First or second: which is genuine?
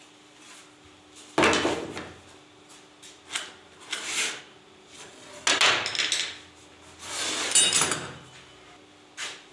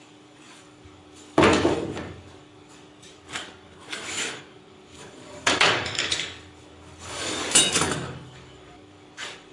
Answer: first